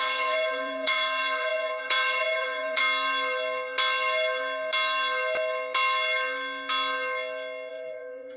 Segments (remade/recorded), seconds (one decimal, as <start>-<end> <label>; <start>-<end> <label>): 0.0-2.8 remade; 2.8-7.7 recorded; 7.7-8.4 remade